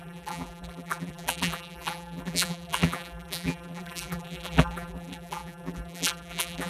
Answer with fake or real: fake